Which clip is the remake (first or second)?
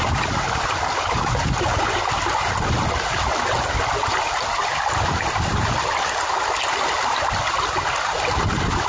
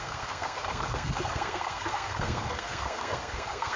second